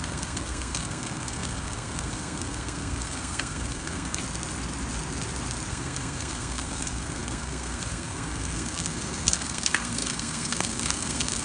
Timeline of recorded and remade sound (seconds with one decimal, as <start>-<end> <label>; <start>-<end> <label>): 0.0-4.2 remade; 4.2-5.7 recorded; 5.7-11.4 remade